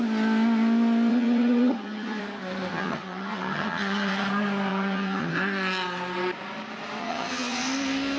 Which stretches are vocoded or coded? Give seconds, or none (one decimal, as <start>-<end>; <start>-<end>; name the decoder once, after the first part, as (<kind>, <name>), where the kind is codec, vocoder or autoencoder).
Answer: 1.1-2.2 (vocoder, HiFi-GAN); 2.7-4.2; 4.7-5.3; 7.0-7.6